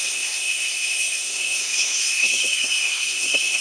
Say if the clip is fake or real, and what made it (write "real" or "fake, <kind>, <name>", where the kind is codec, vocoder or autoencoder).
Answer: fake, codec, SNAC